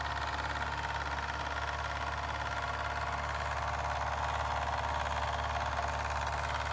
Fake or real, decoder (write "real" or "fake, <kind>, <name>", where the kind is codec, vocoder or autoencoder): real